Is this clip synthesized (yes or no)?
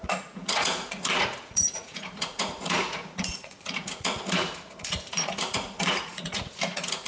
yes